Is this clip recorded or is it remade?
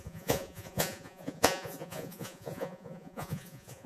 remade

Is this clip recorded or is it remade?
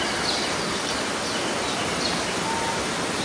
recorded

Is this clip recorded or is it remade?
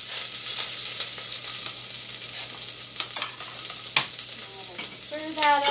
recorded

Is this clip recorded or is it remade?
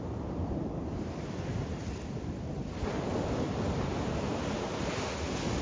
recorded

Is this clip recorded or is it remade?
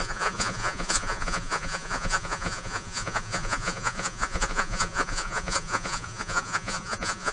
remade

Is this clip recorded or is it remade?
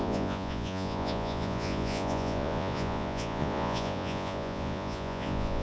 remade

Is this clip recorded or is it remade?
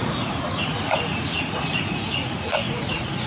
remade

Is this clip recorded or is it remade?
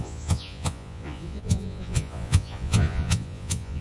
remade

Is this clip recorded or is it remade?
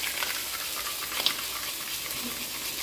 recorded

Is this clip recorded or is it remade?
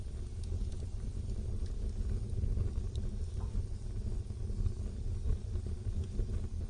recorded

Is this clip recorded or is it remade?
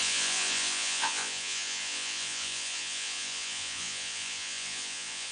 remade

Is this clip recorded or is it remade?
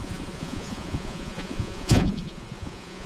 remade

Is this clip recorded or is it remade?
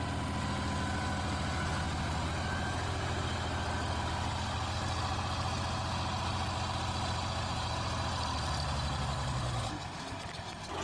recorded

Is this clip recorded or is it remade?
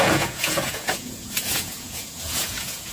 remade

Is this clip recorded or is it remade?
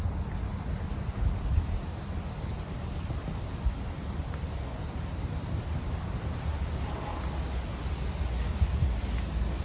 recorded